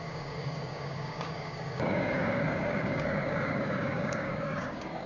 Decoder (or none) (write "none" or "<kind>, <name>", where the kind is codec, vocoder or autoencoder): codec, DAC